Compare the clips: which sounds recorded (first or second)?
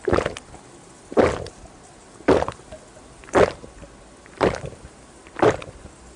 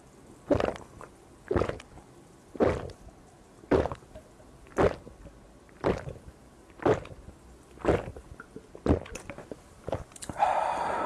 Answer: second